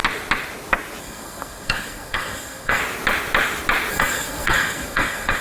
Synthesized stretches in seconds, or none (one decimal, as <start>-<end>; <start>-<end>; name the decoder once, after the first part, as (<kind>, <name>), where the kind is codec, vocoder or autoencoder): 1.0-2.8 (codec, SNAC); 3.9-5.4